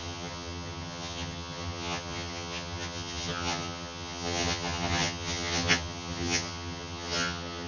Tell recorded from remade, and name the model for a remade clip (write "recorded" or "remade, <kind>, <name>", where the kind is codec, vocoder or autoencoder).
remade, vocoder, HiFi-GAN